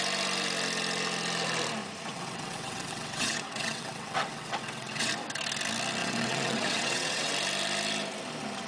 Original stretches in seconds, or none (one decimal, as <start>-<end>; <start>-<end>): 0.0-2.1; 5.1-6.0; 7.3-8.7